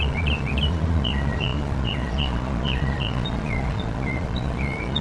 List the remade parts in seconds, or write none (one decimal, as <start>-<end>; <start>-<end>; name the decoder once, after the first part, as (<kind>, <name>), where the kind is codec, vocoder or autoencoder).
0.0-5.0 (vocoder, Vocos)